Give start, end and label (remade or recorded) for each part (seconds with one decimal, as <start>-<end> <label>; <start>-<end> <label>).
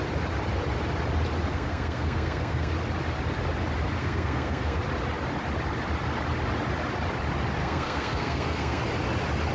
0.0-1.5 recorded; 1.5-2.7 remade; 2.7-4.0 recorded; 4.0-4.8 remade; 4.8-7.6 recorded; 7.6-8.8 remade; 8.8-9.5 recorded